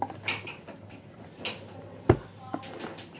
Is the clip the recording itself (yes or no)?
yes